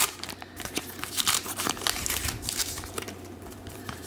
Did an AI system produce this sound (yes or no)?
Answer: yes